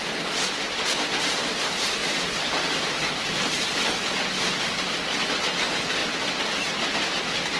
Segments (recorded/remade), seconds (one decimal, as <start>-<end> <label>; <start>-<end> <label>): 0.0-7.6 recorded

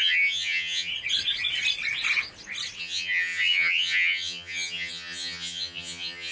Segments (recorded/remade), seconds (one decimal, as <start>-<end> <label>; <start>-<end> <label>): 0.0-0.9 remade; 0.9-2.8 recorded; 2.8-6.3 remade